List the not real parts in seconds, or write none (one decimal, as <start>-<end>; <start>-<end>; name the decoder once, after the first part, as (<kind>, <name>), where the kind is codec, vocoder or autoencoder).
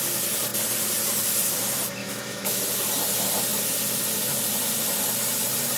2.0-2.6 (autoencoder, DAC-VAE)